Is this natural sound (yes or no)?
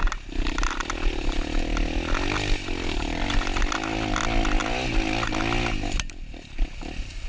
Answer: yes